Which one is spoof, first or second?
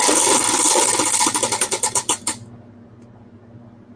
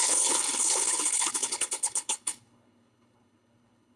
second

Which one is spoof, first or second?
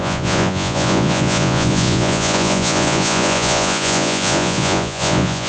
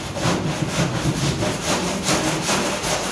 first